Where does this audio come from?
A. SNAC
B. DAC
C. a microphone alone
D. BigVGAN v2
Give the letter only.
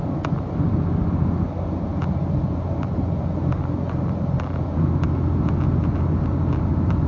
C